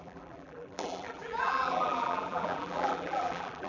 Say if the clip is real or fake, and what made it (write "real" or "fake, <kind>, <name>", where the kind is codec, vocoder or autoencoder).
fake, vocoder, BigVGAN v2